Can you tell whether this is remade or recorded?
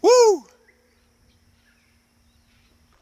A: recorded